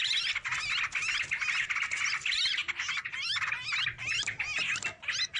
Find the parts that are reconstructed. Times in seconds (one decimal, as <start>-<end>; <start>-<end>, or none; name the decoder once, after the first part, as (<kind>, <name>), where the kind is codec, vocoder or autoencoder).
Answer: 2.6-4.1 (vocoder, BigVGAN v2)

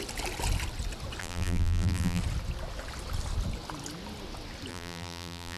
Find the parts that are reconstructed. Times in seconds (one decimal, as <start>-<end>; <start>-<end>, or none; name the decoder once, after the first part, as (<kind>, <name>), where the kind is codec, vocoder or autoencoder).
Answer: 1.2-2.2 (vocoder, BigVGAN v2); 4.7-5.6

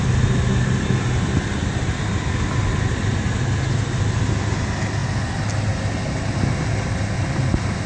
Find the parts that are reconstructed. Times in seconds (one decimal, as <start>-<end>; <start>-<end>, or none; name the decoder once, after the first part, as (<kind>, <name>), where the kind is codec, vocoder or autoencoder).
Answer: none

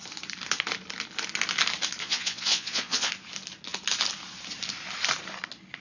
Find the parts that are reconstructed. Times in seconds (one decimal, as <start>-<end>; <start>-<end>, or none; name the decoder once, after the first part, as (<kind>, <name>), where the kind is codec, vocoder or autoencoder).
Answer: 2.0-3.1 (vocoder, Vocos)

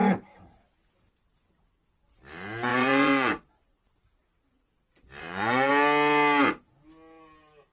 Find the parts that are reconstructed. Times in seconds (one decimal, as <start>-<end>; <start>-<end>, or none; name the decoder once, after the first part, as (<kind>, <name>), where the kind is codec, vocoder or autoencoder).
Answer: 2.7-3.5 (vocoder, Vocos); 5.2-5.7